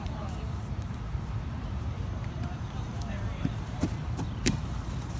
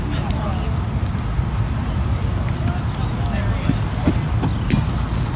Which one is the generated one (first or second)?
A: first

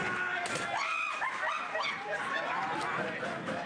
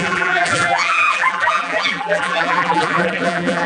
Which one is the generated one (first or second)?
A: second